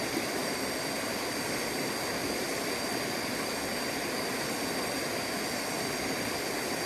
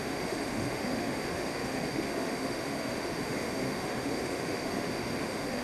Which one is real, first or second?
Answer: first